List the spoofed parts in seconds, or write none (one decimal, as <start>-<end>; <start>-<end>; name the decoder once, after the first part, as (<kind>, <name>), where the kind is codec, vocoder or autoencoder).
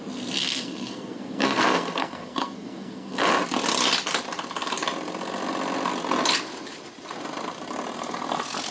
0.4-3.3 (codec, SNAC)